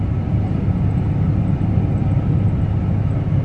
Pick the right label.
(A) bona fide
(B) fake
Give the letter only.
A